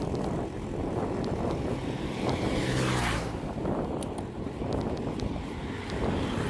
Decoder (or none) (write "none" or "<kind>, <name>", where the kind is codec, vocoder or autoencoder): none